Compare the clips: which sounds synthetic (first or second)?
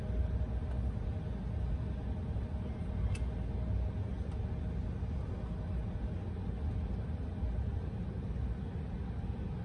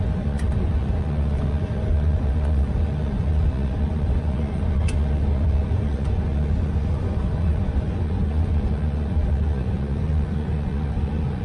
second